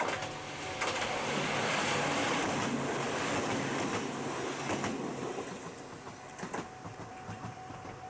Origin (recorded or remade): recorded